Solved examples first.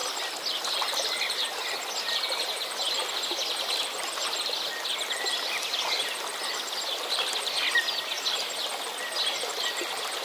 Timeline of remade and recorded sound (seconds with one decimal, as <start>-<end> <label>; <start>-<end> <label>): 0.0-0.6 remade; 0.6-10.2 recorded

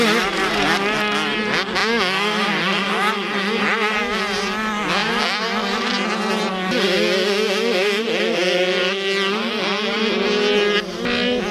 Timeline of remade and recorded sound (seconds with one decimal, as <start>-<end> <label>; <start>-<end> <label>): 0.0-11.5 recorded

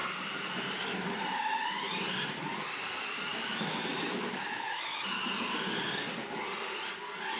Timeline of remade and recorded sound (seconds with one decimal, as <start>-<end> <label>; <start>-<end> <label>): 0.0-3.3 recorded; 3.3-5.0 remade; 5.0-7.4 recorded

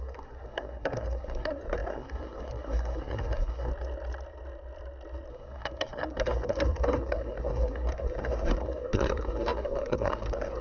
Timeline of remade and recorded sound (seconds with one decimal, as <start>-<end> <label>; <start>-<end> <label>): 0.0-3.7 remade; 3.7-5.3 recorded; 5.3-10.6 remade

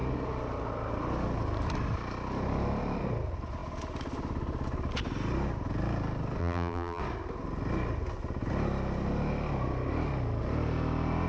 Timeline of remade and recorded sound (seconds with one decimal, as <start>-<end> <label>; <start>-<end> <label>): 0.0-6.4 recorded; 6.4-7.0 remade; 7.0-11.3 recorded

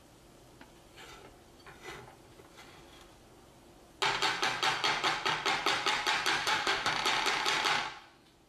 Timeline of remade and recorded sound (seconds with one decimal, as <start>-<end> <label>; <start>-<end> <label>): 0.0-6.4 recorded; 6.4-6.9 remade; 6.9-8.5 recorded

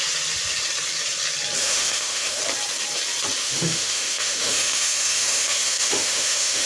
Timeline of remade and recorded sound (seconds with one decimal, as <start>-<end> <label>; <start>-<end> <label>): 0.0-1.6 recorded; 1.6-2.4 remade; 2.4-3.4 recorded; 3.4-6.7 remade

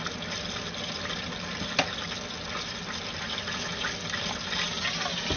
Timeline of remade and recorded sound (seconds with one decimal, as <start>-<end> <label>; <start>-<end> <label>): 0.0-5.4 recorded